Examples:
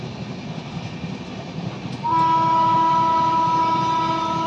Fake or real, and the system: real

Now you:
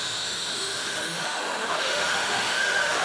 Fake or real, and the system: fake, autoencoder, DAC-VAE